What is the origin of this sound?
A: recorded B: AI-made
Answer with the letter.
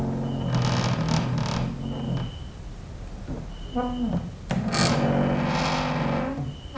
A